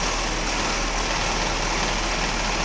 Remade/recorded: recorded